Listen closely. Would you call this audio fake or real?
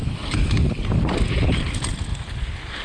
real